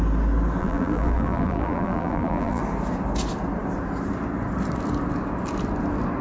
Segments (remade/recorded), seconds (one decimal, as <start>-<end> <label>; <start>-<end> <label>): 0.0-0.6 recorded; 0.6-2.6 remade; 2.6-6.2 recorded